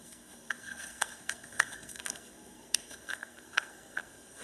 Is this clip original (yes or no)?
no